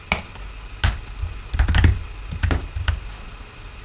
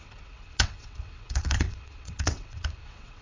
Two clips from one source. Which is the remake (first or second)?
second